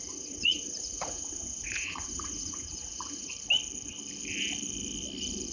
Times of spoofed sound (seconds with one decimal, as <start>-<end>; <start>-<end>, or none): 0.0-3.3